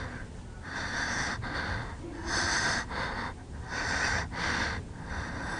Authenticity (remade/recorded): recorded